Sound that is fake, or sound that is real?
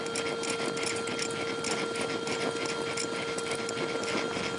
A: real